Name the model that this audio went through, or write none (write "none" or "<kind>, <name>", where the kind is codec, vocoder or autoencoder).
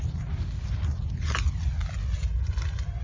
none